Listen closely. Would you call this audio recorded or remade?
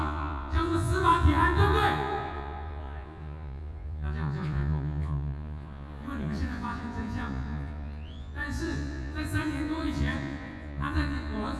remade